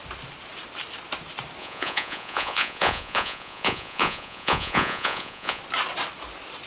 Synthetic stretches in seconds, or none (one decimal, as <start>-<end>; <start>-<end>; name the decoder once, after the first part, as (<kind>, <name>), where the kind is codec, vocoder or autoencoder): 1.6-5.6 (vocoder, Vocos)